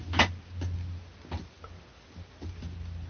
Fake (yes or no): no